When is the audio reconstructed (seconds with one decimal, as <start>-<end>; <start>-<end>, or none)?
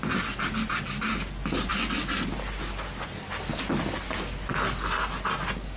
none